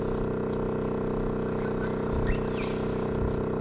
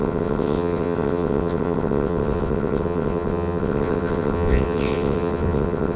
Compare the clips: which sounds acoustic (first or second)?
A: first